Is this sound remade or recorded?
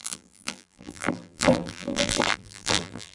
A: remade